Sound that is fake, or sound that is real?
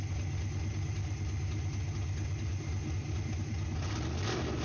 real